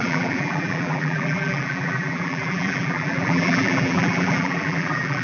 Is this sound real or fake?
fake